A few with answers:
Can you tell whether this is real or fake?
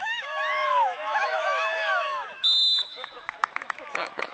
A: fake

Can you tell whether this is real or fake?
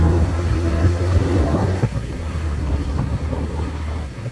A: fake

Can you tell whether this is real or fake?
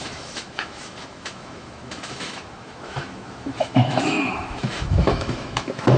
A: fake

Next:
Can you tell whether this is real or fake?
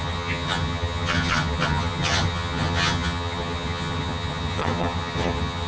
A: fake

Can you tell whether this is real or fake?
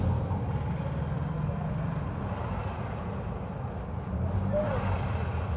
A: real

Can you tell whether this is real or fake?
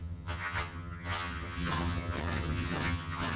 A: fake